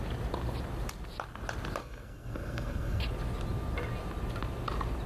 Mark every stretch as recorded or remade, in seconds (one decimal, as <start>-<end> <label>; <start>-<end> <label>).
0.0-1.8 recorded; 1.8-3.0 remade; 3.0-5.1 recorded